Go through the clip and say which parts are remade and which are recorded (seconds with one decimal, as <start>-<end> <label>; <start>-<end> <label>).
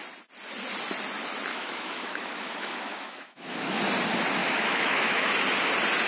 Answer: 0.0-1.5 recorded; 1.5-3.8 remade; 3.8-4.4 recorded; 4.4-5.3 remade; 5.3-6.1 recorded